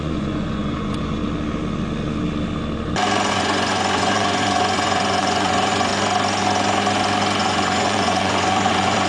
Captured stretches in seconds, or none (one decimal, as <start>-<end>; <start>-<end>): 1.2-3.3; 5.9-7.4